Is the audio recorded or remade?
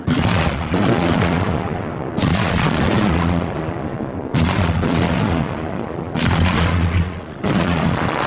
remade